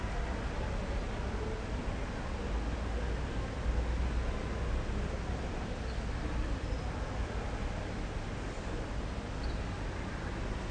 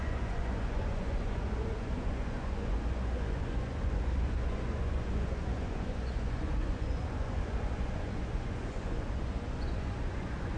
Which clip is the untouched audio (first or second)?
first